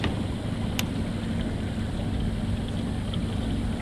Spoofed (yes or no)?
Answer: no